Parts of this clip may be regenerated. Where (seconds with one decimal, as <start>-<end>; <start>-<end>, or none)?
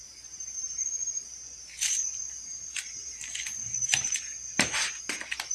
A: 0.0-5.5